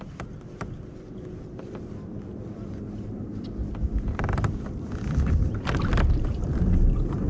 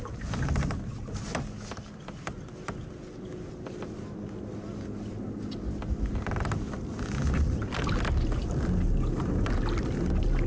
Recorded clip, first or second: second